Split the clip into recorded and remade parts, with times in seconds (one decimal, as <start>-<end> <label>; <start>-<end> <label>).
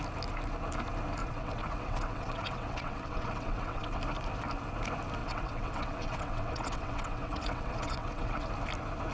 0.0-1.2 recorded; 1.2-4.0 remade; 4.0-5.2 recorded; 5.2-8.5 remade; 8.5-9.1 recorded